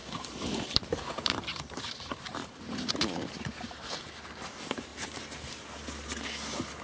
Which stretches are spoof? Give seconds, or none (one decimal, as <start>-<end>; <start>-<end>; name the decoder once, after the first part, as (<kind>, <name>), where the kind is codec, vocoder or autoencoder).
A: 0.0-4.1 (vocoder, BigVGAN v2)